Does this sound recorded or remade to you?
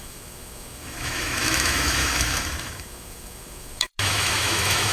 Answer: remade